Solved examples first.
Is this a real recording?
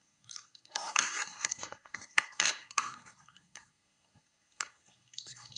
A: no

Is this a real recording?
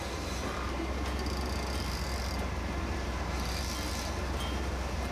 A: yes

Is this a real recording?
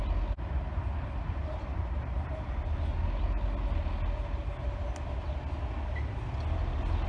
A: yes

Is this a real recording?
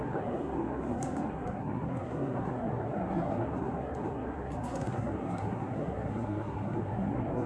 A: no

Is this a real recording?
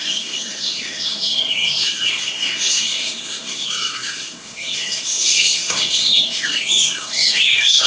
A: no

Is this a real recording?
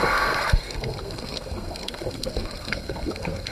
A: no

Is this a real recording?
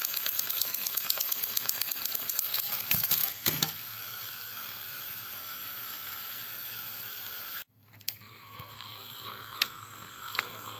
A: no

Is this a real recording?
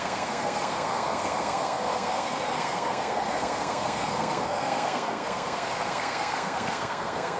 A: no